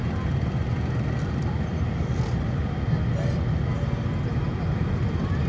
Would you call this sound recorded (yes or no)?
yes